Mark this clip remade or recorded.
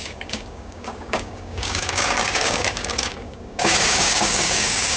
remade